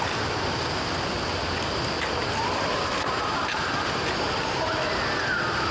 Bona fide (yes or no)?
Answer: yes